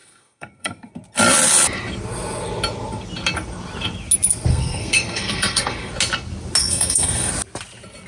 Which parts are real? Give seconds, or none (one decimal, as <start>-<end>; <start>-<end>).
0.9-4.5; 5.9-6.6; 7.3-8.1

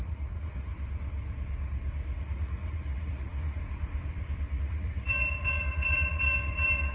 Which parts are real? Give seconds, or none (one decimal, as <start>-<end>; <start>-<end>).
0.7-2.2; 3.6-4.6

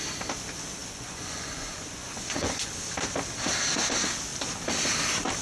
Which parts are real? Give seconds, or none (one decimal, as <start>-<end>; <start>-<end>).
0.0-0.8; 2.7-5.4

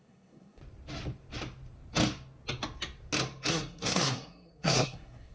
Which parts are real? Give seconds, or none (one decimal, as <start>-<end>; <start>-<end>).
0.6-3.5

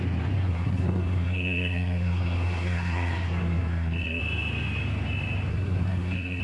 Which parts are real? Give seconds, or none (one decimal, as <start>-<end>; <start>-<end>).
0.0-0.4; 4.2-5.5

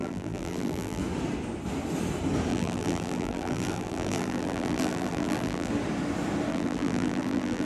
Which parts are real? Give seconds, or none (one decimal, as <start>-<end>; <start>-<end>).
1.0-2.5; 5.7-6.5

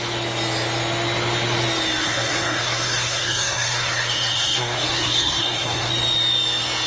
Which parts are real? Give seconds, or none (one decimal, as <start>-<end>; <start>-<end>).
0.0-2.0; 5.9-6.9